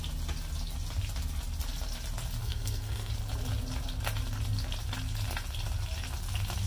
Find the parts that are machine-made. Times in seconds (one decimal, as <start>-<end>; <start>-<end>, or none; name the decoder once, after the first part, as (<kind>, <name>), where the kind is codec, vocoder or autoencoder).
2.4-3.1 (codec, SNAC)